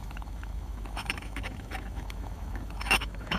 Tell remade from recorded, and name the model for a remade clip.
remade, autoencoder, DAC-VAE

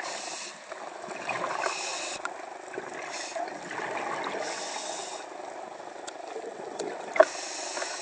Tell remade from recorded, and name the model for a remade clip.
recorded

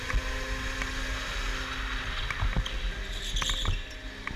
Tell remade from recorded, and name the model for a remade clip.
recorded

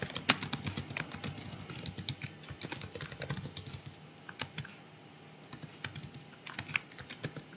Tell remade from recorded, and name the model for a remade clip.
recorded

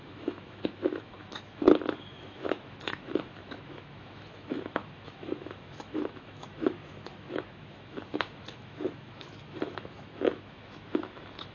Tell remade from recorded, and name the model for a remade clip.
remade, autoencoder, DAC-VAE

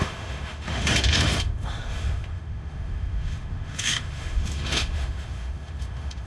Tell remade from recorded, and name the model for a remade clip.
remade, autoencoder, DAC-VAE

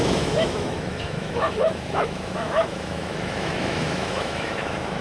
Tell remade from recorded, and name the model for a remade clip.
remade, autoencoder, DAC-VAE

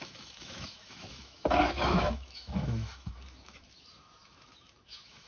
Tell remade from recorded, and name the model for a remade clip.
remade, autoencoder, DAC-VAE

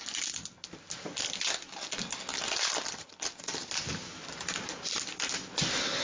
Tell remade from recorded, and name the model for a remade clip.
recorded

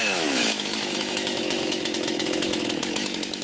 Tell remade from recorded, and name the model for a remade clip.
remade, autoencoder, DAC-VAE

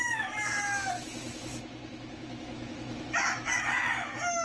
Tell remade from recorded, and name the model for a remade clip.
remade, autoencoder, DAC-VAE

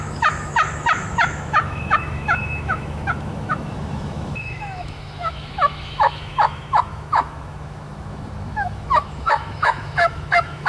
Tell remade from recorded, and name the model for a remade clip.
remade, autoencoder, DAC-VAE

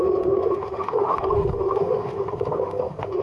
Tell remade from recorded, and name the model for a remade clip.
remade, autoencoder, DAC-VAE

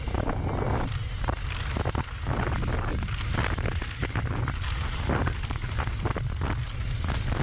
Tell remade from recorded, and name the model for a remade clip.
recorded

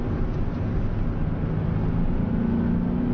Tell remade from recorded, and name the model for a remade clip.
recorded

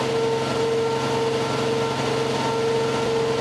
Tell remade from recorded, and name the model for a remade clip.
recorded